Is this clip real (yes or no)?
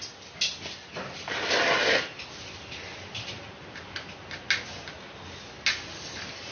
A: yes